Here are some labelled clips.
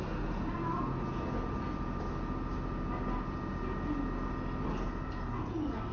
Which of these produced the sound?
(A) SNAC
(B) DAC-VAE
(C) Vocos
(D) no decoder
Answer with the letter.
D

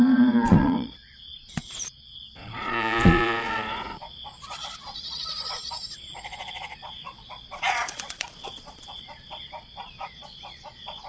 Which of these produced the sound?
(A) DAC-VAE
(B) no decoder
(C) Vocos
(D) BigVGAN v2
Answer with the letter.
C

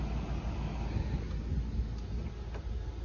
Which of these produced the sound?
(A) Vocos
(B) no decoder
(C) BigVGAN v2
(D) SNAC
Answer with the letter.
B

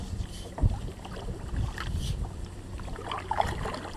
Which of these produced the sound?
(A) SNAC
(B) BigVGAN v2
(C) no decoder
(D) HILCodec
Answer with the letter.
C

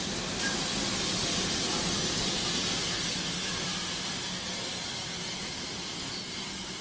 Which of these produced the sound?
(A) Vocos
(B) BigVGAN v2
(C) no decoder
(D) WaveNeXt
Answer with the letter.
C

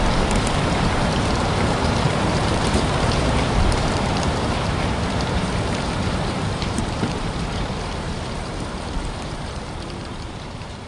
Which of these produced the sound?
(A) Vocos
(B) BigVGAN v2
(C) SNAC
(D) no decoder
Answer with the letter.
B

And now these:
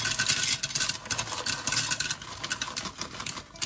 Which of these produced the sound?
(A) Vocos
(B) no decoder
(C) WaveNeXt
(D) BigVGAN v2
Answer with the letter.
B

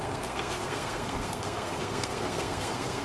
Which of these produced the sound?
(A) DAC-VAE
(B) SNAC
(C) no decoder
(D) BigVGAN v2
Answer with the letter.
B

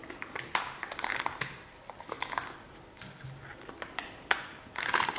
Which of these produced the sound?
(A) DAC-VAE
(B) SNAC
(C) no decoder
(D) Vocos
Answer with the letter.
C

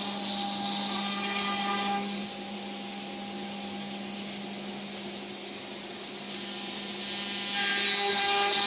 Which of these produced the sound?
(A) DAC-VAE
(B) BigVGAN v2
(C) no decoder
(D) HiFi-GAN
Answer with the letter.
C